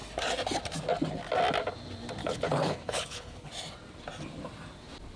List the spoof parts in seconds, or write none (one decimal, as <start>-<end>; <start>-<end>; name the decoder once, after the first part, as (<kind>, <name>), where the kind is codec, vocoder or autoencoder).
2.2-3.5 (codec, HILCodec)

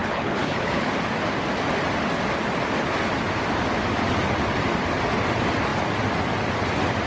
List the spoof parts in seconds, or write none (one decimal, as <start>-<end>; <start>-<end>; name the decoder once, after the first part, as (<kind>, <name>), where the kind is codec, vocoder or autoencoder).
0.0-0.9 (codec, HILCodec)

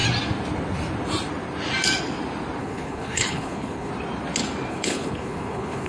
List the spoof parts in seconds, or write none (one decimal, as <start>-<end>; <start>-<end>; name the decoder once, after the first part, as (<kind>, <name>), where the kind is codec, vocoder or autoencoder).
2.6-3.9 (codec, HILCodec); 4.7-5.9

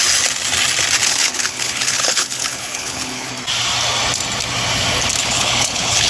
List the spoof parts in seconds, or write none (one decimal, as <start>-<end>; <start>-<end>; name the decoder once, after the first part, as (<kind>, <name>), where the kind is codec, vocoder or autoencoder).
1.0-3.3 (codec, HILCodec); 5.2-6.1

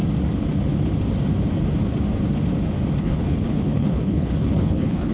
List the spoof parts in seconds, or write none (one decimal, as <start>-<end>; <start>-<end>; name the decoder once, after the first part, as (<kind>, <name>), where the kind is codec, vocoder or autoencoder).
3.0-5.1 (codec, HILCodec)

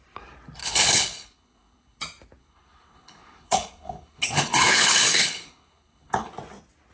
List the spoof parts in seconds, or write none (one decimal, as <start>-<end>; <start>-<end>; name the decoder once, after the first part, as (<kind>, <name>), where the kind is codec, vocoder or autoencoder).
0.6-2.0 (codec, HILCodec); 2.4-6.3

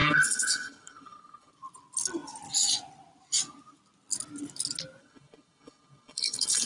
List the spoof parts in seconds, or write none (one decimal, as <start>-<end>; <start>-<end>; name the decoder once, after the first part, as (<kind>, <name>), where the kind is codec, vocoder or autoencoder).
0.0-1.5 (codec, HILCodec); 5.0-6.7